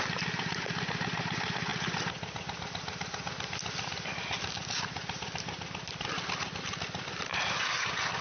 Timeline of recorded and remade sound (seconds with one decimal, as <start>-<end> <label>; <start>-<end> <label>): 0.0-8.2 recorded